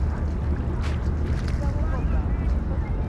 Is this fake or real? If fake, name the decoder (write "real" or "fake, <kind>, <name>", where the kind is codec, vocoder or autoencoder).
real